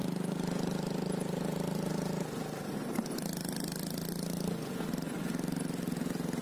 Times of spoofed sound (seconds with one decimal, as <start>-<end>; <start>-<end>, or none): none